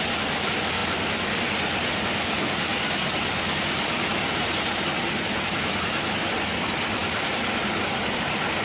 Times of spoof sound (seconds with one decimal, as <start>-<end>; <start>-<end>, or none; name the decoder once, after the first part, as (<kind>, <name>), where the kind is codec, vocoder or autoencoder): none